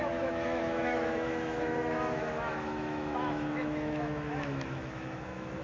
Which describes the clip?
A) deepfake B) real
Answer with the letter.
A